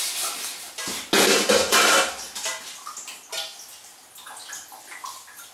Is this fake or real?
real